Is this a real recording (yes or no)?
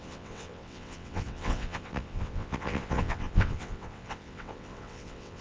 no